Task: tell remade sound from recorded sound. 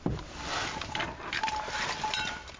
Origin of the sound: remade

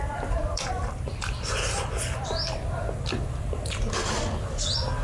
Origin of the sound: remade